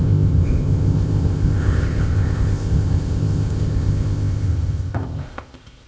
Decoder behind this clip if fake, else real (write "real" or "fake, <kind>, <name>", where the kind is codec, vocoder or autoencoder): fake, codec, ZipCodec